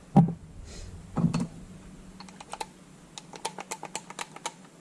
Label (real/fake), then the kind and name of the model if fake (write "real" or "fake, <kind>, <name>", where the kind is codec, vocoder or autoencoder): real